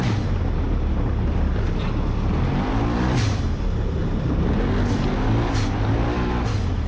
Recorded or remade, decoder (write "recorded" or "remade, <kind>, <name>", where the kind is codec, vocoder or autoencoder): recorded